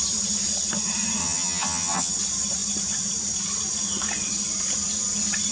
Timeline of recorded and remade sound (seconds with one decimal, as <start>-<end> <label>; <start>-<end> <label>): 0.0-1.2 recorded; 1.2-2.1 remade; 2.1-5.5 recorded